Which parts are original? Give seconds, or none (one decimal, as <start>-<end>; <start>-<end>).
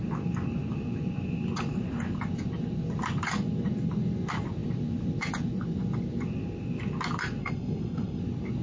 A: 0.0-7.4; 8.2-8.6